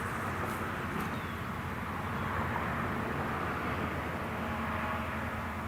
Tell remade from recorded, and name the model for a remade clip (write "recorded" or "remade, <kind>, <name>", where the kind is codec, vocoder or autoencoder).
recorded